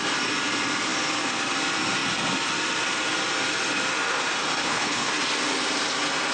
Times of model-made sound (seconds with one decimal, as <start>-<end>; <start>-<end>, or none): 4.6-5.1